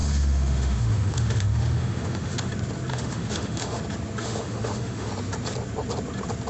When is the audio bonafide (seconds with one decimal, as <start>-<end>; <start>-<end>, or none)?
2.5-2.9; 3.8-4.2; 5.1-6.5